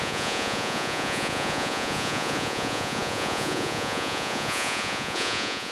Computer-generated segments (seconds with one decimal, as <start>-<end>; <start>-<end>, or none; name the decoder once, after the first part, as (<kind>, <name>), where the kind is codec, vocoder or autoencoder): 0.0-5.7 (vocoder, Vocos)